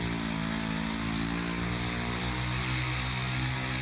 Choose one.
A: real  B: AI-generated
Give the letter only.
A